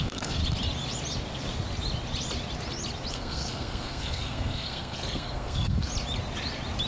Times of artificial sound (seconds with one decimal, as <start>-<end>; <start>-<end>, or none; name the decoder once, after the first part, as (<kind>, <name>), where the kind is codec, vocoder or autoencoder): 0.0-0.4 (codec, SNAC); 3.1-5.9